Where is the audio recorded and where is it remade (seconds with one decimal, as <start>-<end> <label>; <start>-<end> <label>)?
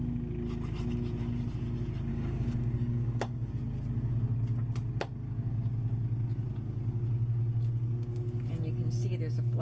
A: 0.0-2.1 recorded; 2.1-3.5 remade; 3.5-9.6 recorded